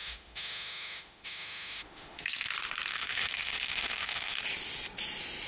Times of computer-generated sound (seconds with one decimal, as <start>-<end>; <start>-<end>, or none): 0.0-2.5; 2.9-4.4

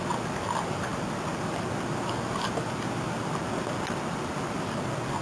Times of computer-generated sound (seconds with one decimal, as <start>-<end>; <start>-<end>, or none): none

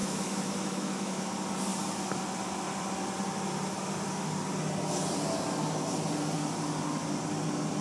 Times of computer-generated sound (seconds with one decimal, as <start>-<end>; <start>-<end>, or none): 0.0-1.2

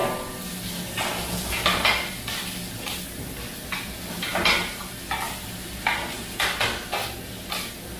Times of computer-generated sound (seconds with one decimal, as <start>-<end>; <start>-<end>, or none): none